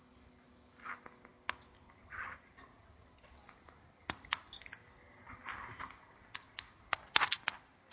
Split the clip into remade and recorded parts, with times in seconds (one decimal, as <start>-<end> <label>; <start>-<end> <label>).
0.0-1.3 remade; 1.3-2.5 recorded; 2.5-4.3 remade; 4.3-5.7 recorded; 5.7-7.9 remade